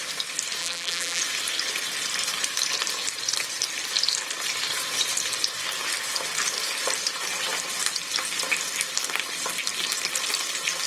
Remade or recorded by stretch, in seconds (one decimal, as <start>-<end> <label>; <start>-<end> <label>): 0.0-0.6 recorded; 0.6-1.2 remade; 1.2-10.9 recorded